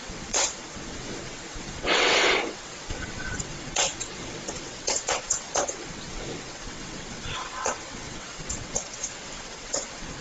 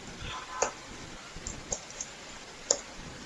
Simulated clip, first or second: first